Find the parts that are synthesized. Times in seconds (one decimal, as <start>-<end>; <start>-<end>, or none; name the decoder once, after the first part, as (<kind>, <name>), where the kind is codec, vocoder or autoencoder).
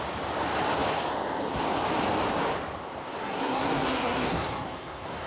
3.2-5.3 (codec, SNAC)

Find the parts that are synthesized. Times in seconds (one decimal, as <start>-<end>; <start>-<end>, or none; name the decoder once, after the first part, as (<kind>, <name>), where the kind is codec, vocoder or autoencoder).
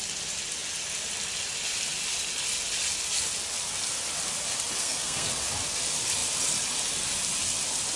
4.8-5.3 (codec, SNAC)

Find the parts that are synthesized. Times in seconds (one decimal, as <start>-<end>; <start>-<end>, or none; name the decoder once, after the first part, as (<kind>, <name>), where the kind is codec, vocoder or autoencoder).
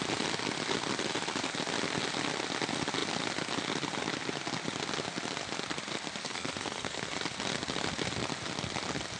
6.2-7.1 (codec, SNAC)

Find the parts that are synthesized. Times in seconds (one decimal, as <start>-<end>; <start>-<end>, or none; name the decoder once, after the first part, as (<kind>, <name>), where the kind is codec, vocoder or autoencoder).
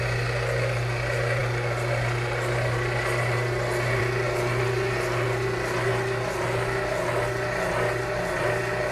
none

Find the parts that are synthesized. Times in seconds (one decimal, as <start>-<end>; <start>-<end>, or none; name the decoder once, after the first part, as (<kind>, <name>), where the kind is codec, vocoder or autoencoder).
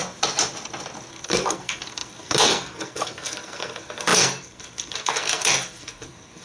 1.1-6.4 (codec, SNAC)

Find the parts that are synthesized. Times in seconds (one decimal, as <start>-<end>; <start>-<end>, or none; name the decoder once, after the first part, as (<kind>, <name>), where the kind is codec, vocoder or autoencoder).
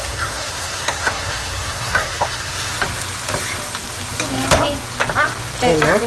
0.0-2.7 (codec, SNAC)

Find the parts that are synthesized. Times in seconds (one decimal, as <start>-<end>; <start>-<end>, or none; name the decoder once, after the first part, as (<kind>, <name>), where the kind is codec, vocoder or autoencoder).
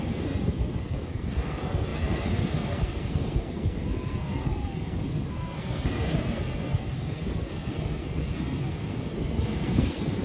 0.0-10.2 (codec, SNAC)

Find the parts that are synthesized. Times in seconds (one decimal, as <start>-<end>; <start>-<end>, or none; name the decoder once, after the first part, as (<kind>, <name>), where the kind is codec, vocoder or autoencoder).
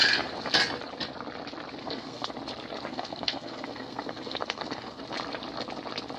1.8-2.3 (codec, SNAC); 2.9-5.0